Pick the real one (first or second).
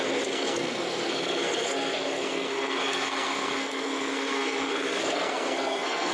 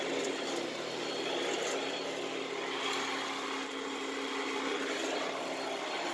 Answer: second